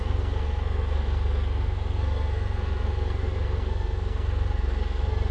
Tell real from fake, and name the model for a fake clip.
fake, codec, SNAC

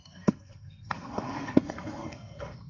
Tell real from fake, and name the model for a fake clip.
fake, codec, SNAC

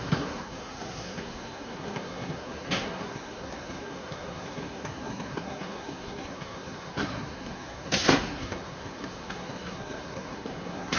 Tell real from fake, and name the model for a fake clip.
fake, codec, SNAC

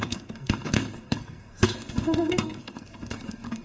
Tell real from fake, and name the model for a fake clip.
fake, codec, SNAC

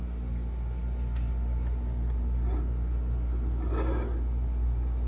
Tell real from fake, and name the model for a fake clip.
real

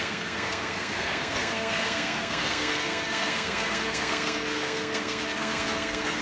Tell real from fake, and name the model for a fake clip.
fake, codec, SNAC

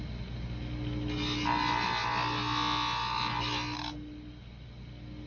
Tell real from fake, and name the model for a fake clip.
real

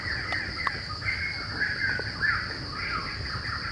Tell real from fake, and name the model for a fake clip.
real